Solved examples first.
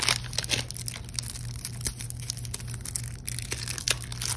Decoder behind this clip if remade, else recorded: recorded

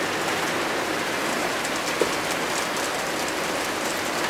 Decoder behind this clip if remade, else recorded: recorded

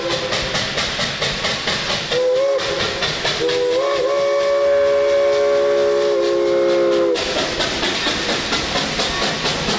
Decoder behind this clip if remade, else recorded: recorded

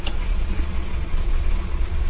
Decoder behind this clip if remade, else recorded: remade, vocoder, Vocos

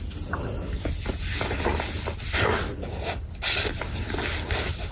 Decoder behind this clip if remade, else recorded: recorded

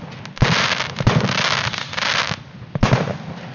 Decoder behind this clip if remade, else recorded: recorded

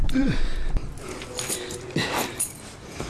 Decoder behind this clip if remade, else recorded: recorded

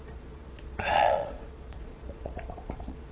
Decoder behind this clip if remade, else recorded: remade, vocoder, Vocos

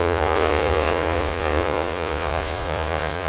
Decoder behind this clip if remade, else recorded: remade, vocoder, Vocos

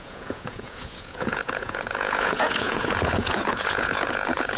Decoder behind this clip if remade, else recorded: remade, vocoder, Vocos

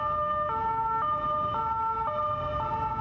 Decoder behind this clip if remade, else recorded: recorded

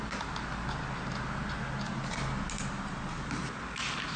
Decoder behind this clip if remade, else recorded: recorded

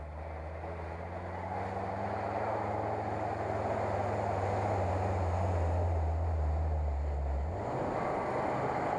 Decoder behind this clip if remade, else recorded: recorded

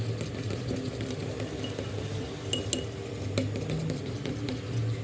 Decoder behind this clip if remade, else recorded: recorded